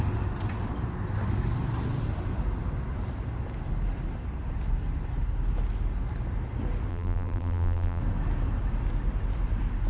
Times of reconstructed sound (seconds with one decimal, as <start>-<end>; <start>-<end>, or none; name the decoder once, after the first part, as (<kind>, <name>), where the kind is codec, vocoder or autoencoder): 6.9-8.0 (vocoder, BigVGAN v2)